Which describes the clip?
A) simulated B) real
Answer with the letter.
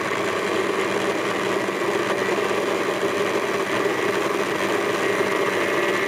B